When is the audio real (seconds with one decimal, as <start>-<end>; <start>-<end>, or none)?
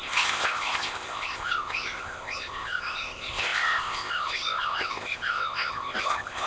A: none